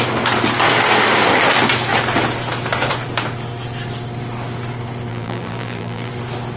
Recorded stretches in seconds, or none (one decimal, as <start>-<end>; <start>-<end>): 0.0-5.1; 6.1-6.6